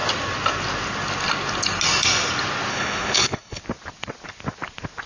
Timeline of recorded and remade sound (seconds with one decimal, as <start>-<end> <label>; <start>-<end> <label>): 0.0-2.7 recorded; 2.7-3.6 remade; 3.6-5.1 recorded